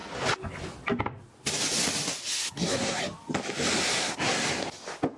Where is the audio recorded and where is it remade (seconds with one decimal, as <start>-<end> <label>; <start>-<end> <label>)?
0.0-2.3 recorded; 2.3-3.0 remade; 3.0-3.9 recorded; 3.9-4.5 remade; 4.5-5.2 recorded